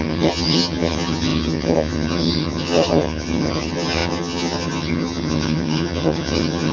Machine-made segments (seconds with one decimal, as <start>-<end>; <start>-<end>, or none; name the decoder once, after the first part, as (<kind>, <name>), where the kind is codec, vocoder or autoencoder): 0.0-6.7 (vocoder, HiFi-GAN)

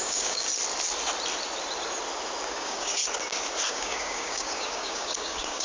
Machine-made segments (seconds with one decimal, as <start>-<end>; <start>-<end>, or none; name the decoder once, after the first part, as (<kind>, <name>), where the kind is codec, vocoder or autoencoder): 0.0-0.5 (codec, DAC); 2.5-3.0; 3.7-5.6